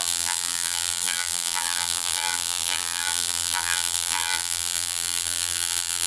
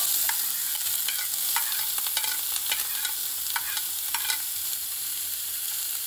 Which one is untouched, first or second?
second